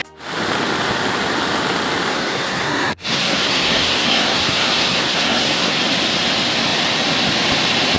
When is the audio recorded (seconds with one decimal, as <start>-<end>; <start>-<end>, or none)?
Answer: 0.0-2.1; 5.8-8.0